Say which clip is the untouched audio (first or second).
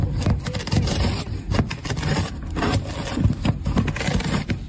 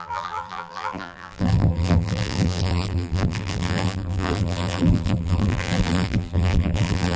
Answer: first